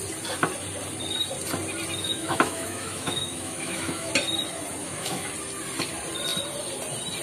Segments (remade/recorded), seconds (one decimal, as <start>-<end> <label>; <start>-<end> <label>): 0.0-2.0 recorded; 2.0-4.1 remade; 4.1-4.8 recorded; 4.8-5.3 remade; 5.3-7.2 recorded